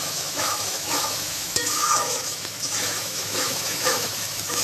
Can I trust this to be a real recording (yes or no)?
no